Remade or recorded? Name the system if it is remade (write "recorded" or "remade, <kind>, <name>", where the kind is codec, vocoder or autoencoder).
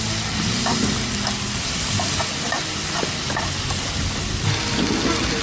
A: recorded